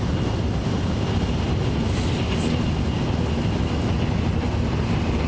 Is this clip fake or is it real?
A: real